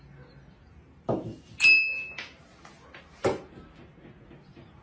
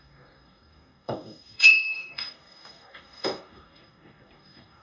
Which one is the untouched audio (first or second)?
first